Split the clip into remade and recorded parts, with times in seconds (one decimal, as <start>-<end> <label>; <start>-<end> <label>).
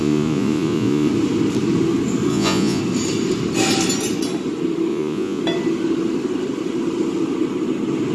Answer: 0.0-1.1 remade; 1.1-2.3 recorded; 2.3-2.8 remade; 2.8-4.9 recorded; 4.9-5.4 remade; 5.4-8.1 recorded